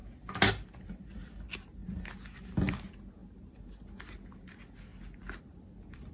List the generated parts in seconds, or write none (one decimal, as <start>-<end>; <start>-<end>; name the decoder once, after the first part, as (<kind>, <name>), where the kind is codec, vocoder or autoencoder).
none